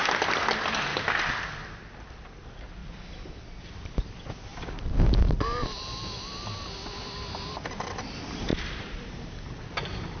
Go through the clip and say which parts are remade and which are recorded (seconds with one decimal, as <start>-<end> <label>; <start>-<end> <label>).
0.0-2.8 recorded; 2.8-3.6 remade; 3.6-5.6 recorded; 5.6-6.3 remade; 6.3-8.5 recorded; 8.5-9.6 remade; 9.6-10.2 recorded